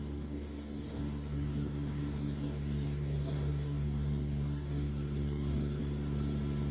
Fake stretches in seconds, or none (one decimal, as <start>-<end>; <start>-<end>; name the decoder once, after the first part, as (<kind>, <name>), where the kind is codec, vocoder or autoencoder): 0.0-5.8 (codec, DAC)